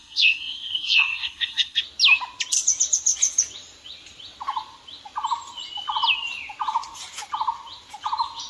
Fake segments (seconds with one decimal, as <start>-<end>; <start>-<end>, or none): 0.0-1.8